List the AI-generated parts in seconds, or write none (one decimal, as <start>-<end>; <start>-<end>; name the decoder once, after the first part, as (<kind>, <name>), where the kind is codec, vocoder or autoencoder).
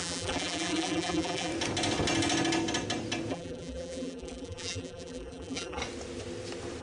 0.0-1.5 (vocoder, BigVGAN v2); 3.3-5.8